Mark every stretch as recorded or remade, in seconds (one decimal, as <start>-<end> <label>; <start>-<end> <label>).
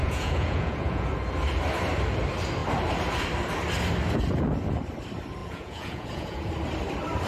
0.0-1.1 remade; 1.1-5.4 recorded; 5.4-6.5 remade; 6.5-7.3 recorded